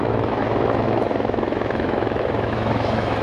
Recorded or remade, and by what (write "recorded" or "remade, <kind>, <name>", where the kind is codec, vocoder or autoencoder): remade, autoencoder, DAC-VAE